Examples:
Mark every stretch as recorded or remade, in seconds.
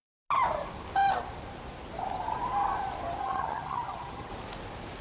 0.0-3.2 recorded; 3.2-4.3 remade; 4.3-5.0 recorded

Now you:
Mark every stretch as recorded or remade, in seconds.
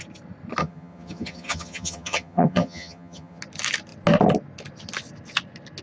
0.0-0.6 recorded; 0.6-3.4 remade; 3.4-5.8 recorded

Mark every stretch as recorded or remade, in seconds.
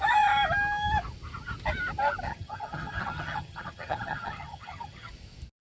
0.0-2.3 recorded; 2.3-5.1 remade; 5.1-5.6 recorded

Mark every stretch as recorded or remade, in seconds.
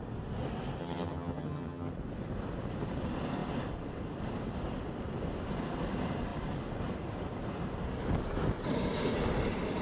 0.0-0.8 recorded; 0.8-1.9 remade; 1.9-9.8 recorded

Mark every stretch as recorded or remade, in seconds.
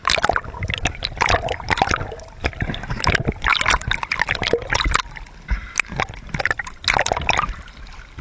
0.0-8.2 recorded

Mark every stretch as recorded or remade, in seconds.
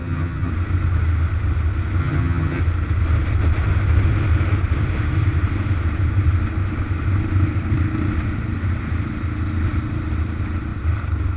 0.0-0.5 remade; 0.5-2.0 recorded; 2.0-2.6 remade; 2.6-11.4 recorded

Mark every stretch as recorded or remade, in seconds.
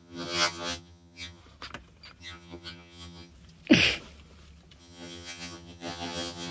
0.0-1.4 remade; 1.4-2.2 recorded; 2.2-3.3 remade; 3.3-4.8 recorded; 4.8-6.5 remade